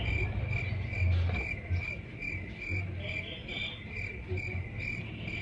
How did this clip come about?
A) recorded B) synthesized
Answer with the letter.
A